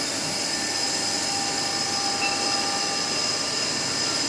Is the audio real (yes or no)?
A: yes